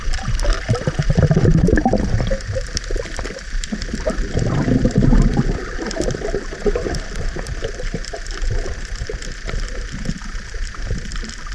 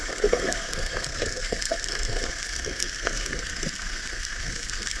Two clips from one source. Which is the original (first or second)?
first